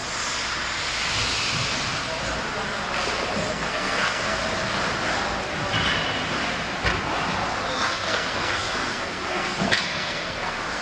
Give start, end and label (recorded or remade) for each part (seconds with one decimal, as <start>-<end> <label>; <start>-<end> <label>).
0.0-3.5 recorded; 3.5-4.4 remade; 4.4-7.7 recorded; 7.7-10.8 remade